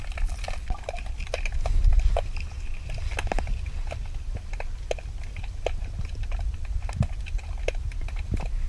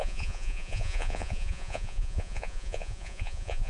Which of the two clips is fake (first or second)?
second